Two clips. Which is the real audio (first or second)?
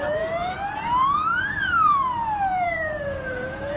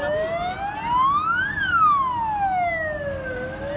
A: second